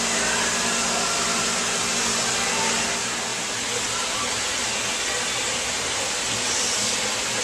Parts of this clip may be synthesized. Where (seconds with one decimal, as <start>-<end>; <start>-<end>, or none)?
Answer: 5.4-7.4